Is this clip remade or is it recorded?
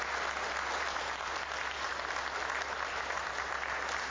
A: recorded